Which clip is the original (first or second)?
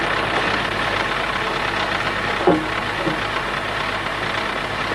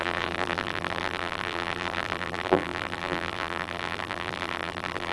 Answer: first